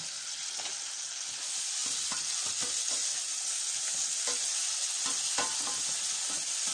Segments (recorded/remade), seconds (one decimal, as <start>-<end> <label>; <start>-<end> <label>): 0.0-6.7 recorded